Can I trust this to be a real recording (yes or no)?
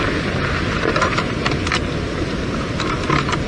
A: yes